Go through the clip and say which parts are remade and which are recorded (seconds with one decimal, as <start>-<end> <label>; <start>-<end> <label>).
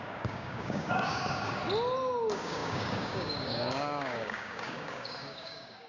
0.0-1.6 remade; 1.6-2.2 recorded; 2.2-5.9 remade